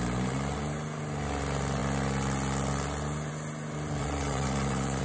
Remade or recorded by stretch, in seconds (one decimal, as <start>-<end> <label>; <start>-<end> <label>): 0.0-4.0 recorded; 4.0-5.0 remade